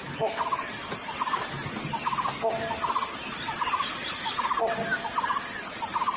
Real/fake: real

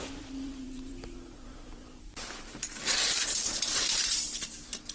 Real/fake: fake